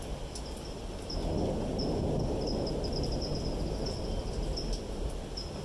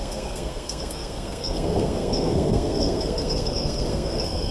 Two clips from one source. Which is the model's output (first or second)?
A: second